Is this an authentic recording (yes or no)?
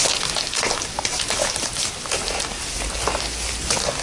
yes